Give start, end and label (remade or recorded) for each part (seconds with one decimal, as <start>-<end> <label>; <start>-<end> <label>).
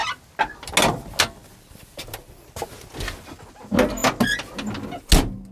0.0-5.5 recorded